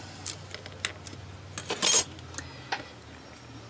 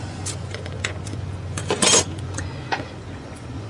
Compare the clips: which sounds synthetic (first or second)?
second